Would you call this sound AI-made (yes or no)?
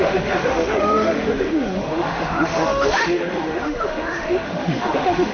yes